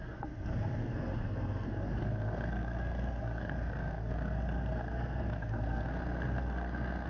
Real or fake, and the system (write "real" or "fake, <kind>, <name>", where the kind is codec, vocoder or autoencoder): fake, codec, SNAC